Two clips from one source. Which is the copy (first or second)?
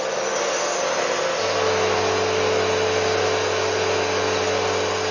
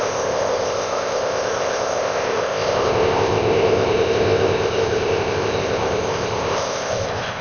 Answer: second